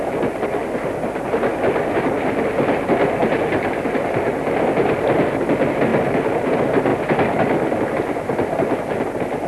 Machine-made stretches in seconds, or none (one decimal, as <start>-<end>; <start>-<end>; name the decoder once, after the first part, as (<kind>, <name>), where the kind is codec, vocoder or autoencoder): none